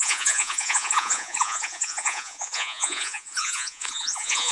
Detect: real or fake fake